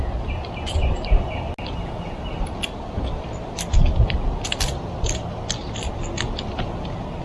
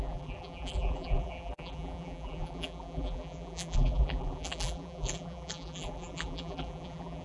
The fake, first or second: second